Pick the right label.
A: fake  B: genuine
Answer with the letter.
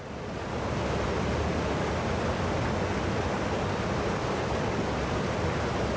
B